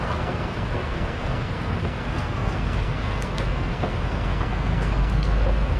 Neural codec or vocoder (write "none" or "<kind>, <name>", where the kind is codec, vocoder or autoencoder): codec, SNAC